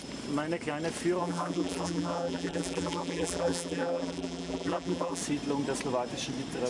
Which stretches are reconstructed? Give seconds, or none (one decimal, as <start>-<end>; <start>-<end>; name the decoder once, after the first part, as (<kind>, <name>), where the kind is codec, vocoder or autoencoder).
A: 1.2-5.2 (vocoder, BigVGAN v2)